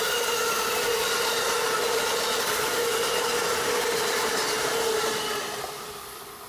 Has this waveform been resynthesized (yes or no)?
no